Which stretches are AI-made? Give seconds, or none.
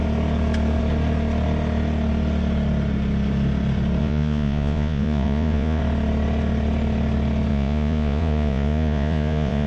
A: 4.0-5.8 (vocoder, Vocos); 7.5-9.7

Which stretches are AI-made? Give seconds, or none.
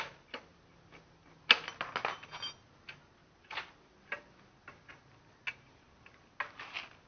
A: none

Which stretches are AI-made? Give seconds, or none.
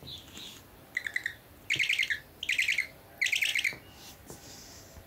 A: none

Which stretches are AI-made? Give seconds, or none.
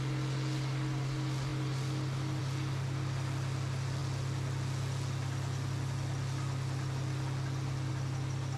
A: none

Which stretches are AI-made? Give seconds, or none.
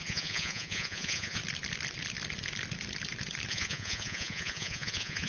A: 0.0-1.4 (vocoder, Vocos); 3.5-5.3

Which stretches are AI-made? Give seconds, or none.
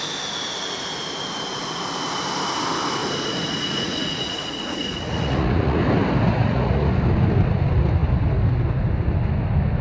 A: 3.0-5.8 (vocoder, Vocos); 6.3-6.9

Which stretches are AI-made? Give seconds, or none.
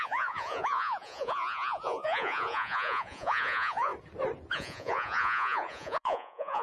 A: 0.0-3.9 (vocoder, Vocos); 4.5-6.6